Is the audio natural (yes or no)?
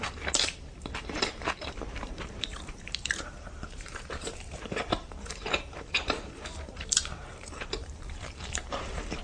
no